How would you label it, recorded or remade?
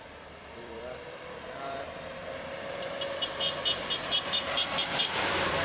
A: remade